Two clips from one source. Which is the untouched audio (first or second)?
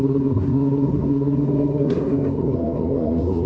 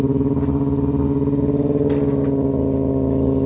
second